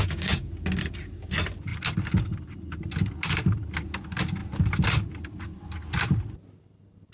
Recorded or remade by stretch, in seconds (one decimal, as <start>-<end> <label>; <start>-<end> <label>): 0.0-0.5 remade; 0.5-7.1 recorded